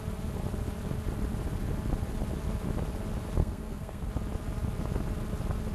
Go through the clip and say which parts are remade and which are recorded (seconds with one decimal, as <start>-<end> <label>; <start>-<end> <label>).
0.0-3.4 recorded; 3.4-4.1 remade; 4.1-5.7 recorded